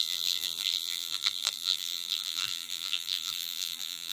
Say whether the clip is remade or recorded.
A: remade